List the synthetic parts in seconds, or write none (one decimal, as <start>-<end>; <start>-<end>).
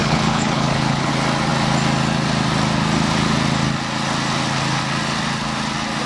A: 0.0-1.1